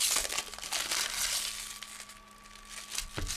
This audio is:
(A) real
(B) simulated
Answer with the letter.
A